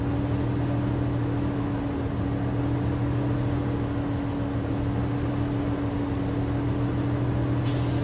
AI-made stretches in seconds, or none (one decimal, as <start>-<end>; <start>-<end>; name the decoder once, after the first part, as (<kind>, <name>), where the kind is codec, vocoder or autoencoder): 1.2-1.8 (autoencoder, DAC-VAE)